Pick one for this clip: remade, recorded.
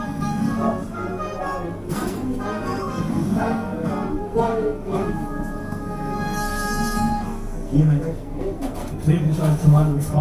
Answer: remade